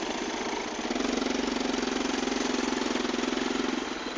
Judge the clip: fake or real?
real